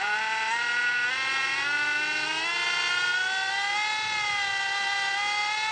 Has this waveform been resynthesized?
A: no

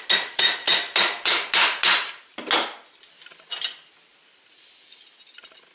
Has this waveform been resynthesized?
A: no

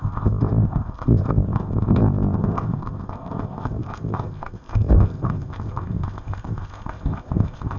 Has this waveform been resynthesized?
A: yes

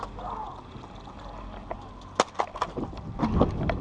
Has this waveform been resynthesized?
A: no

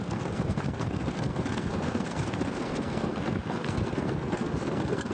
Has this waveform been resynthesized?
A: yes